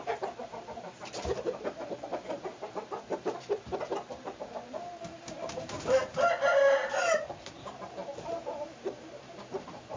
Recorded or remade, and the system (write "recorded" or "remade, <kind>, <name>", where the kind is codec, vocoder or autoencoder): remade, vocoder, BigVGAN v2